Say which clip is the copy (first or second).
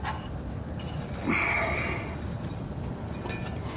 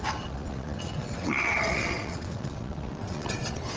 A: second